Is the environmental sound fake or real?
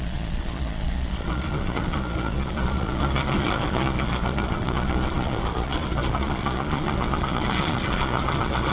fake